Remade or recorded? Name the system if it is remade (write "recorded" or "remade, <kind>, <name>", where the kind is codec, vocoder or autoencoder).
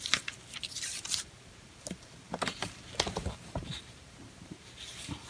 remade, vocoder, BigVGAN v2